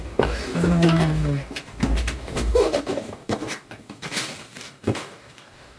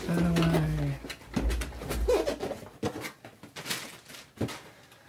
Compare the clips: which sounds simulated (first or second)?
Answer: first